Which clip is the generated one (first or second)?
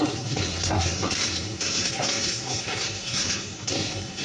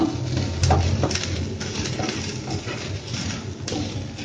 first